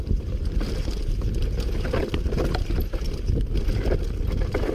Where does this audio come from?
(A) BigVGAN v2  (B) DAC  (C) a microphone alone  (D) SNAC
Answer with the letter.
C